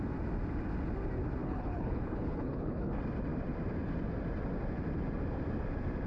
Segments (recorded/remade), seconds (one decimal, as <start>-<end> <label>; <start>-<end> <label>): 0.0-1.4 recorded; 1.4-3.0 remade; 3.0-6.1 recorded